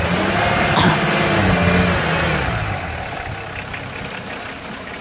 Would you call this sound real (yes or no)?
yes